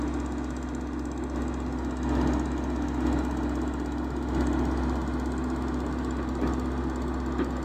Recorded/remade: recorded